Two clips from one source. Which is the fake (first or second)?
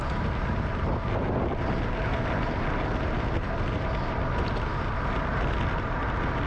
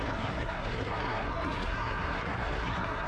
second